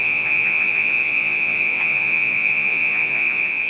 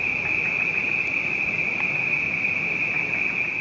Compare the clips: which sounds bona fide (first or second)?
second